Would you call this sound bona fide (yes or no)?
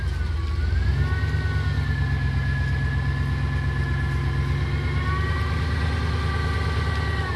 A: yes